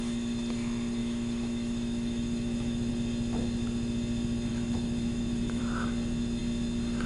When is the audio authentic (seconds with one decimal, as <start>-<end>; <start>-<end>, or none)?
0.0-1.0; 2.9-4.5; 5.6-7.1

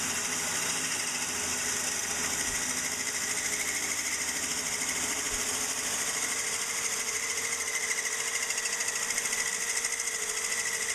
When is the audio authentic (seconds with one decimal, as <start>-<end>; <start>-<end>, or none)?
0.0-10.9

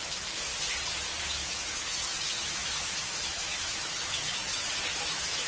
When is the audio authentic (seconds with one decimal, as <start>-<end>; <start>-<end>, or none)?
0.5-1.2